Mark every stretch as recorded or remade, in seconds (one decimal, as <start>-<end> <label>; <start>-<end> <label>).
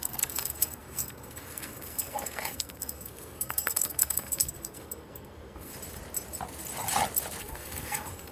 0.0-5.7 remade; 5.7-7.4 recorded; 7.4-8.3 remade